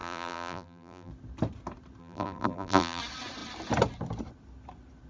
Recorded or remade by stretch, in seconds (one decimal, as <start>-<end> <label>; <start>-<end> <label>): 0.0-1.1 remade; 1.1-2.0 recorded; 2.0-3.0 remade; 3.0-5.1 recorded